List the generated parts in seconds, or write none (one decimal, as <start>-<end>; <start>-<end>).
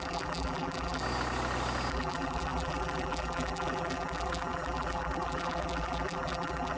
0.0-1.0; 1.9-6.8